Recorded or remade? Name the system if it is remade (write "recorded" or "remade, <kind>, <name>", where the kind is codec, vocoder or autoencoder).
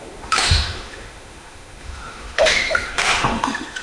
remade, autoencoder, DAC-VAE